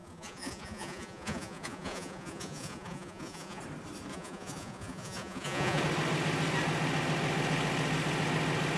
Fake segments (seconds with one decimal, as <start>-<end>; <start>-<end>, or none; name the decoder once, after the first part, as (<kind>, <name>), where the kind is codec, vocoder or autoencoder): 0.0-3.6 (vocoder, Vocos); 4.1-5.8